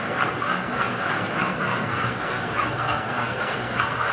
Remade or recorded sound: remade